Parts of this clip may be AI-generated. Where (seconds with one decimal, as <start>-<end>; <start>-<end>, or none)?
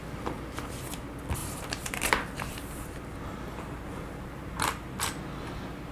1.4-2.0; 3.9-5.1